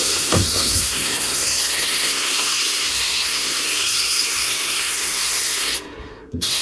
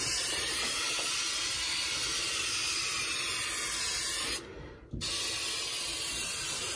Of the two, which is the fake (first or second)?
first